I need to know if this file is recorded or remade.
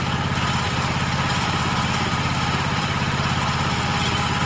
remade